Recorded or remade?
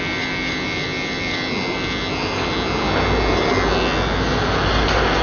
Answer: recorded